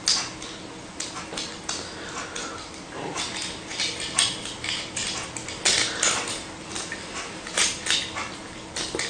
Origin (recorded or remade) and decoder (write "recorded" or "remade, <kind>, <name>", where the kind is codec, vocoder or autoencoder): recorded